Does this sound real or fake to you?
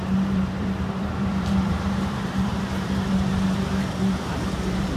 fake